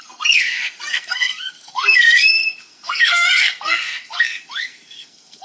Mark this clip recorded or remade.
remade